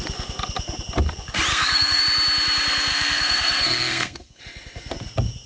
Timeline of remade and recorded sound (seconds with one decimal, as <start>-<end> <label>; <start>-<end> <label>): 0.0-1.5 recorded; 1.5-2.0 remade; 2.0-2.9 recorded; 2.9-4.4 remade; 4.4-5.5 recorded